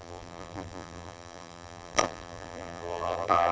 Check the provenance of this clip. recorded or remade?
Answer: remade